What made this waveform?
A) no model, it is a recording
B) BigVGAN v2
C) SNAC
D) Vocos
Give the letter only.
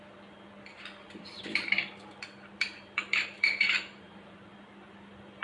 B